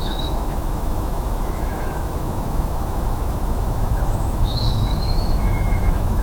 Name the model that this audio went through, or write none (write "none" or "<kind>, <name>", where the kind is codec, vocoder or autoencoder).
autoencoder, DAC-VAE